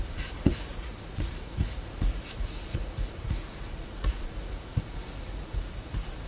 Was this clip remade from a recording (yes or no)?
yes